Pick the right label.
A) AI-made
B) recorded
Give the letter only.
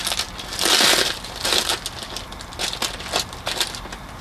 B